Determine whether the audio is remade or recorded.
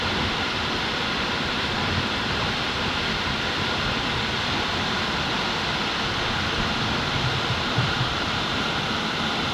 remade